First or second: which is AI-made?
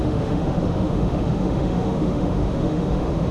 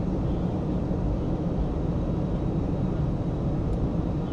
first